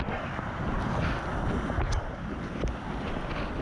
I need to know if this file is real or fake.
real